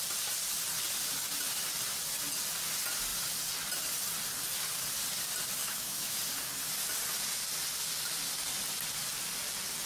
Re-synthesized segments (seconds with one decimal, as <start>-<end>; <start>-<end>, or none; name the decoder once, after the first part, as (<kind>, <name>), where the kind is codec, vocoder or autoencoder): 5.6-6.2 (autoencoder, DAC-VAE)